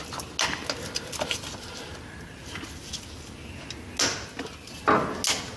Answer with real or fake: real